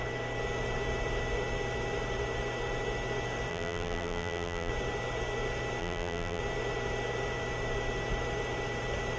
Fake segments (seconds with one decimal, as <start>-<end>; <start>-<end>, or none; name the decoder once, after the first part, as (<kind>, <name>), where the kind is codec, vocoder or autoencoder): 3.5-4.7 (vocoder, BigVGAN v2); 5.8-6.4